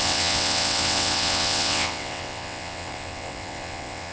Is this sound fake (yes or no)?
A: yes